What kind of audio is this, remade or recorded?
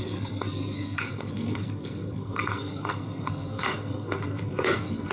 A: remade